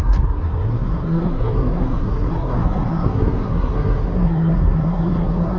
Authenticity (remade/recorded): remade